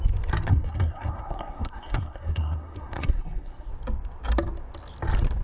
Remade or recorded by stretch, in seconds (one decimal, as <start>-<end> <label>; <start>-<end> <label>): 0.0-0.5 recorded; 0.5-3.7 remade; 3.7-5.4 recorded